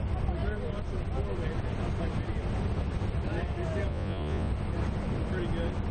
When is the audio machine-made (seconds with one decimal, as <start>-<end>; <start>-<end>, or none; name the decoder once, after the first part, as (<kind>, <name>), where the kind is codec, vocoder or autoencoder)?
3.9-4.5 (vocoder, Vocos)